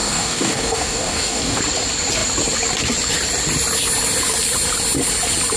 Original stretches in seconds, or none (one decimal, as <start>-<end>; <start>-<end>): 1.6-5.6